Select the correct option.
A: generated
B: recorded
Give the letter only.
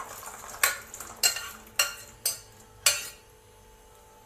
B